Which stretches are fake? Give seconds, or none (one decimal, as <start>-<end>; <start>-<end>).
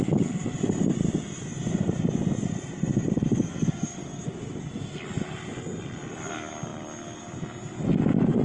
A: 0.4-1.3; 3.0-6.3; 6.7-7.2